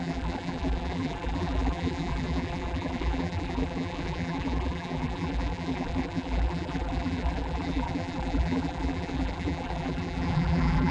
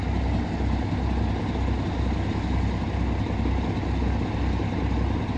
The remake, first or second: first